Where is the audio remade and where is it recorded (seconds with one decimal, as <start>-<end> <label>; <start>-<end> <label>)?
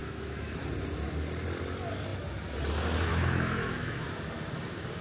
0.0-0.6 remade; 0.6-3.1 recorded; 3.1-4.1 remade; 4.1-5.0 recorded